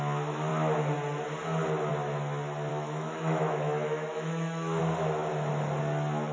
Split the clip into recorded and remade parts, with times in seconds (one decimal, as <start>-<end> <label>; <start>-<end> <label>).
0.0-2.7 recorded; 2.7-4.8 remade; 4.8-6.3 recorded